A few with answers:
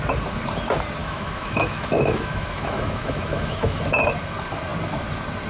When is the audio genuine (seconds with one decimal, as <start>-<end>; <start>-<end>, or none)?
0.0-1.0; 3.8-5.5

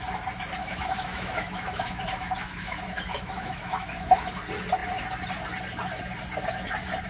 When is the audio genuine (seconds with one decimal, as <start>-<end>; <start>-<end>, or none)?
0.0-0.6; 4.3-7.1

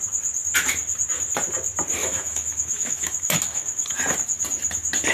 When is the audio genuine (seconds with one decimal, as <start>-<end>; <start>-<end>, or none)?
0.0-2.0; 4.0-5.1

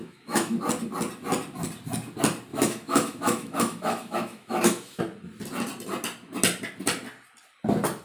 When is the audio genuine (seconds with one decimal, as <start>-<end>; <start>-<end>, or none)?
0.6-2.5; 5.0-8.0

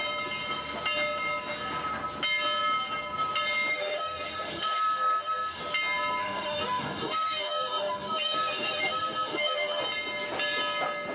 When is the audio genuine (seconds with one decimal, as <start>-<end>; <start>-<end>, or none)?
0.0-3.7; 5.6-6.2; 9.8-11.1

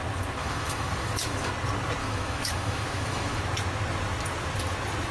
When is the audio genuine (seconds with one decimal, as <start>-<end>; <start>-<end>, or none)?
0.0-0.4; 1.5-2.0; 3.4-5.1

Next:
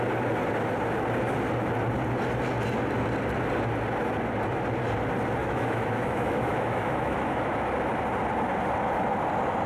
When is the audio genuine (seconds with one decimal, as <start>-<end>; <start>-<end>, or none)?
0.0-5.4; 7.5-9.7

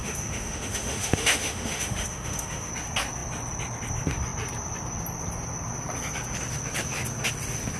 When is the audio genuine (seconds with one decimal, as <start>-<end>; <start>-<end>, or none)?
2.7-7.8